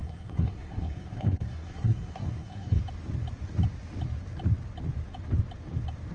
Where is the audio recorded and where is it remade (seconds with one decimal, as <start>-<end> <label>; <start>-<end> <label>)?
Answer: 0.0-2.8 remade; 2.8-6.1 recorded